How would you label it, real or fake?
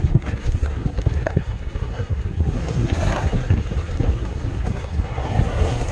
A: fake